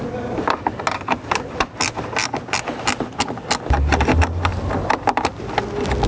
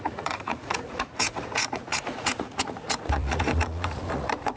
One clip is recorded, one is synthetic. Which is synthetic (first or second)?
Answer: second